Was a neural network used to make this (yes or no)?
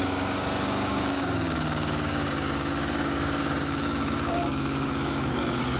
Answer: yes